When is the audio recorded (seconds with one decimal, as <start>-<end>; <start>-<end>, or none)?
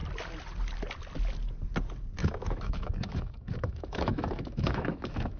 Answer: 0.0-2.2